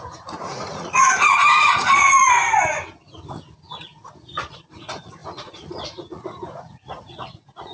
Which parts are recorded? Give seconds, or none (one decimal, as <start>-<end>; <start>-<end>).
2.4-3.8